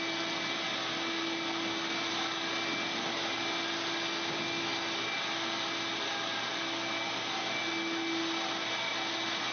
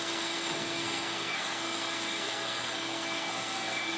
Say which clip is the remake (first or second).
second